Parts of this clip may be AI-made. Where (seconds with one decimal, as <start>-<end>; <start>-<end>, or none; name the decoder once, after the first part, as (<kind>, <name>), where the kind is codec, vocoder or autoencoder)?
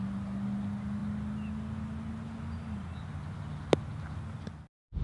none